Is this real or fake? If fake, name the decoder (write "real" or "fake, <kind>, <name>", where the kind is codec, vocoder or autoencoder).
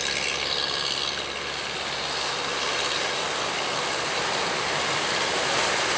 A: real